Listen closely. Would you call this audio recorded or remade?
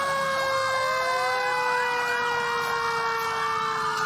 recorded